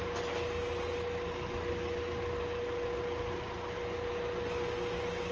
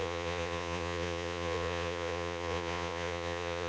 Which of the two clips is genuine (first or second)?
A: first